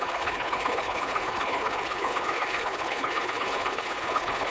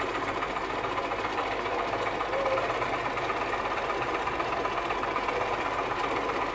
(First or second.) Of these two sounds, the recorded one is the second